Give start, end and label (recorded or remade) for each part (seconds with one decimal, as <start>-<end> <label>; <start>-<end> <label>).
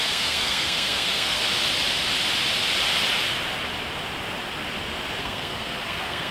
0.0-1.4 remade; 1.4-5.2 recorded; 5.2-6.3 remade